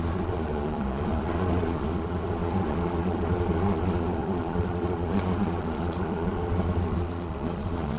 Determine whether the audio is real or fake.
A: fake